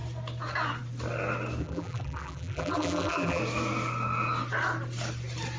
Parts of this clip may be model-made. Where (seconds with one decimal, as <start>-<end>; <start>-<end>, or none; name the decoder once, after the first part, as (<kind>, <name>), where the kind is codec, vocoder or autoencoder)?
1.6-3.4 (vocoder, BigVGAN v2)